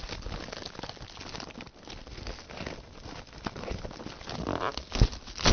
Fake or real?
real